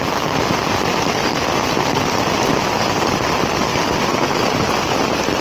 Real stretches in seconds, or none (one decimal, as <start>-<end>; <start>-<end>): 0.0-2.5; 3.3-3.7; 4.4-5.4